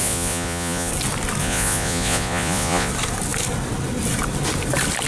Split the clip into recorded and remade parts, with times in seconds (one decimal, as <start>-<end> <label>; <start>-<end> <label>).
0.0-0.9 remade; 0.9-1.4 recorded; 1.4-2.9 remade; 2.9-5.1 recorded